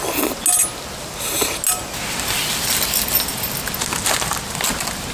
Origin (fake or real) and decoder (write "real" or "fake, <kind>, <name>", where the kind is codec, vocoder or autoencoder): real